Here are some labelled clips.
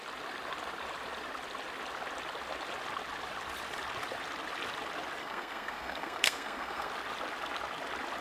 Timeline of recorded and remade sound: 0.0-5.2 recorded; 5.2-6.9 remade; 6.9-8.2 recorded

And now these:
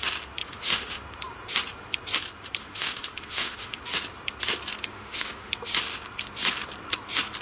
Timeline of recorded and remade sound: 0.0-0.4 recorded; 0.4-1.0 remade; 1.0-2.6 recorded; 2.6-3.8 remade; 3.8-4.9 recorded; 4.9-5.5 remade; 5.5-7.4 recorded